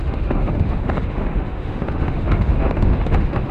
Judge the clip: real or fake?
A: fake